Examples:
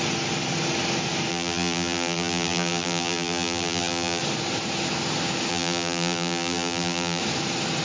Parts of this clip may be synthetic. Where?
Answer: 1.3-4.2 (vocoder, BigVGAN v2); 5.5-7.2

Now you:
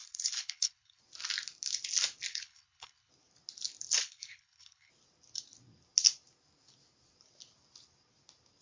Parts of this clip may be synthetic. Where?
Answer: 0.0-1.0 (codec, HILCodec); 2.3-3.1; 4.0-4.9

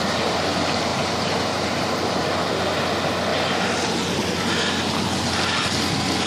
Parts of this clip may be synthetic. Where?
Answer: 0.9-2.2 (vocoder, BigVGAN v2)

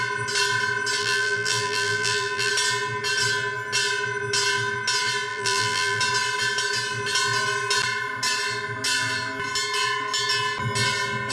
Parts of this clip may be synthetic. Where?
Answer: 1.0-2.5 (vocoder, BigVGAN v2); 5.3-6.0